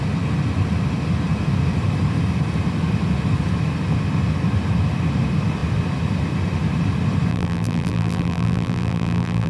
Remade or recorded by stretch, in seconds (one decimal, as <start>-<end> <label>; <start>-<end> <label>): 0.0-7.3 recorded; 7.3-9.5 remade